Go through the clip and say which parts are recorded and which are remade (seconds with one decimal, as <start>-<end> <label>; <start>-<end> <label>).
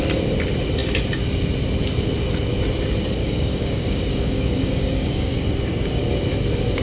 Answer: 0.0-3.2 recorded; 3.2-6.0 remade; 6.0-6.8 recorded